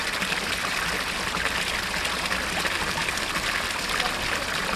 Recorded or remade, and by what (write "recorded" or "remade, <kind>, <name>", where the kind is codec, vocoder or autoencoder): recorded